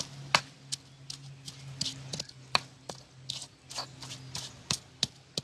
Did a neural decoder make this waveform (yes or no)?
no